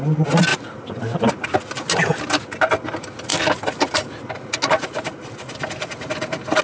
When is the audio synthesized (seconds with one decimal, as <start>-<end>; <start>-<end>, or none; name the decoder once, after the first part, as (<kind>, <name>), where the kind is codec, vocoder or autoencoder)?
none